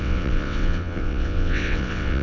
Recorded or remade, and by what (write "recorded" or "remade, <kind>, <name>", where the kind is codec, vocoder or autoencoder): remade, vocoder, WaveNeXt